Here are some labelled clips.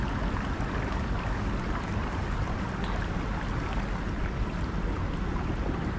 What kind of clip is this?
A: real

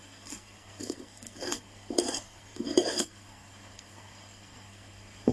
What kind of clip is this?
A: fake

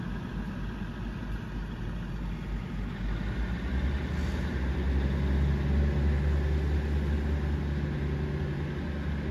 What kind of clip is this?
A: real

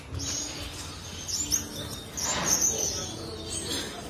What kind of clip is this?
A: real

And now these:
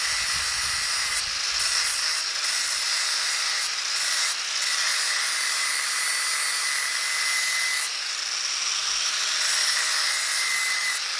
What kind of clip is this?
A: real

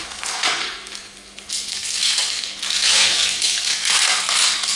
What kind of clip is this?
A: fake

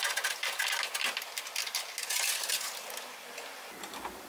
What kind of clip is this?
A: real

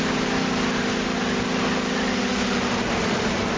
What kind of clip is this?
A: real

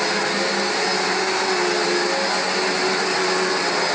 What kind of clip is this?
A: real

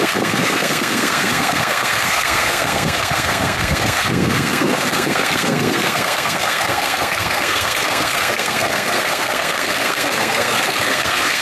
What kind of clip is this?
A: fake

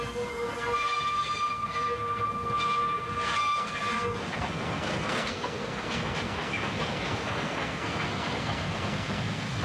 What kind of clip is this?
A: fake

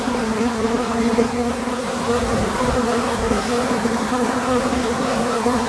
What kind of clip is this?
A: fake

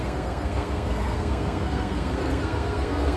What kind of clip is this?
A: fake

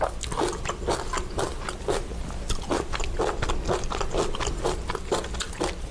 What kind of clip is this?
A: real